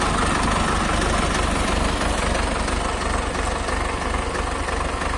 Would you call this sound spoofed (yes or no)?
no